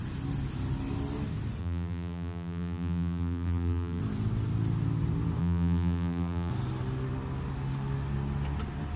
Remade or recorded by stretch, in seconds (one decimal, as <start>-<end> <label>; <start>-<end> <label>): 0.0-1.6 recorded; 1.6-4.0 remade; 4.0-5.4 recorded; 5.4-6.5 remade; 6.5-9.0 recorded